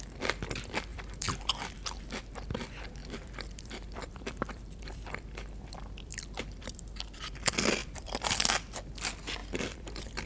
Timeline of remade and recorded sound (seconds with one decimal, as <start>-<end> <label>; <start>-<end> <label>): 0.0-0.9 recorded; 0.9-1.5 remade; 1.5-3.0 recorded; 3.0-6.8 remade; 6.8-7.8 recorded; 7.8-8.8 remade; 8.8-9.4 recorded; 9.4-10.3 remade

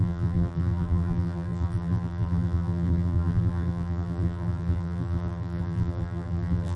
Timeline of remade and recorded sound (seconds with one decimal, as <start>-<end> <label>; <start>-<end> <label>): 0.0-6.8 remade

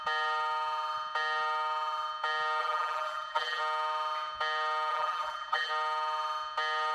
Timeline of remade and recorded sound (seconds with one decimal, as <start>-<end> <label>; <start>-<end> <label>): 0.0-2.6 recorded; 2.6-3.6 remade; 3.6-4.9 recorded; 4.9-5.7 remade; 5.7-6.9 recorded